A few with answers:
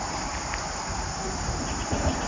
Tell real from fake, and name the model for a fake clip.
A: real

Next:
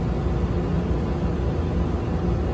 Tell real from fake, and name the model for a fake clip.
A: real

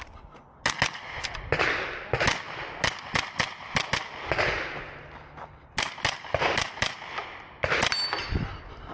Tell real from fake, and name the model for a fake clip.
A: real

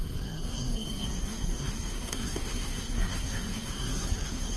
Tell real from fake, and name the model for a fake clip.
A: fake, codec, SNAC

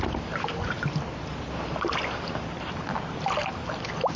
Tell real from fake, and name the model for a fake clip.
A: real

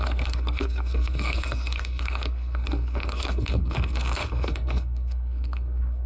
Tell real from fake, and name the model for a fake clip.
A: fake, codec, SNAC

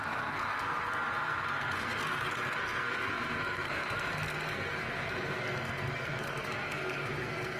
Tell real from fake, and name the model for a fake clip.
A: fake, codec, SNAC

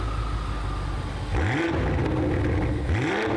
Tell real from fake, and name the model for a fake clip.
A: real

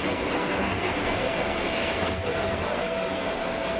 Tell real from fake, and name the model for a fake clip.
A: fake, codec, SNAC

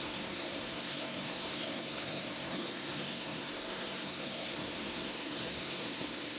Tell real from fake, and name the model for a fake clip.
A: fake, codec, SNAC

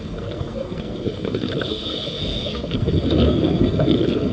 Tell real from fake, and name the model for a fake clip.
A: fake, codec, SNAC